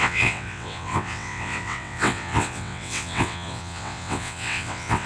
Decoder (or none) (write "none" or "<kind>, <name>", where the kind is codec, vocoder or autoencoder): vocoder, WaveNeXt